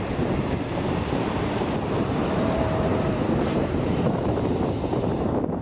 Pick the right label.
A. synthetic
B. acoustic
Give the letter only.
A